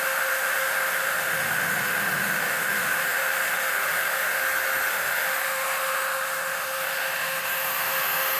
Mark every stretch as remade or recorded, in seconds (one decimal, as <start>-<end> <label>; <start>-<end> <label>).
0.0-4.4 remade; 4.4-4.9 recorded; 4.9-8.4 remade